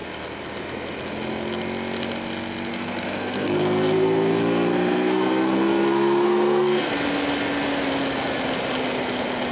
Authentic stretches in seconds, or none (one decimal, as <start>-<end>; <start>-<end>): 0.0-2.7; 6.9-9.5